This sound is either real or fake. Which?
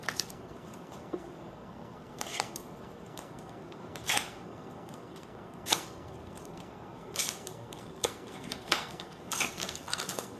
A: fake